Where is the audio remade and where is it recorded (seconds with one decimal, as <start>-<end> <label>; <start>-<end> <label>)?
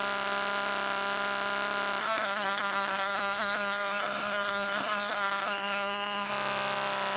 0.0-2.0 recorded; 2.0-6.3 remade; 6.3-7.2 recorded